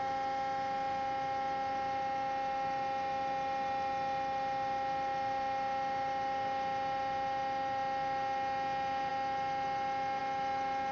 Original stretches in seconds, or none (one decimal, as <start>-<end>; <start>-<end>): 0.0-10.9